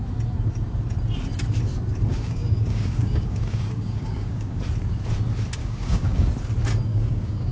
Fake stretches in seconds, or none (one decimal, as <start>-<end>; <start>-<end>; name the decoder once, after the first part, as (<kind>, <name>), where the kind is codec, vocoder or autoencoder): 2.1-4.6 (codec, DAC); 5.6-6.3; 6.9-7.5